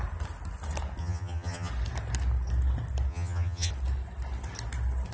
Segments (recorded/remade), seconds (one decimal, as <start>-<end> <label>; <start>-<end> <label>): 0.0-1.0 recorded; 1.0-1.7 remade; 1.7-3.1 recorded; 3.1-3.7 remade; 3.7-5.1 recorded